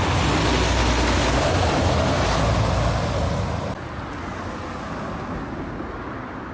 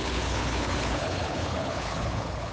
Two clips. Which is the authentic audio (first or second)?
first